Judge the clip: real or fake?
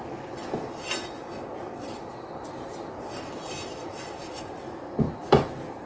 real